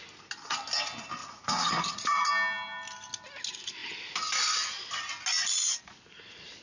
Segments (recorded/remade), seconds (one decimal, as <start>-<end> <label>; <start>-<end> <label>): 0.0-1.2 recorded; 1.2-2.3 remade; 2.3-6.6 recorded